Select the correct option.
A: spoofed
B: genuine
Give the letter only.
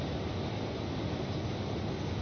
B